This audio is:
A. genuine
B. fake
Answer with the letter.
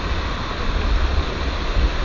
A